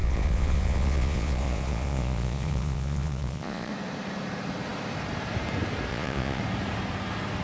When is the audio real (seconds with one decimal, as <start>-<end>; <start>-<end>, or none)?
3.7-5.9; 6.4-7.4